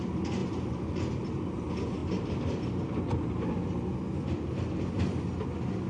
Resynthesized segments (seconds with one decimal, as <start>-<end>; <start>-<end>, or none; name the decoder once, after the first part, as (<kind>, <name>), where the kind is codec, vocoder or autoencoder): 0.4-1.0 (vocoder, BigVGAN v2); 2.0-2.6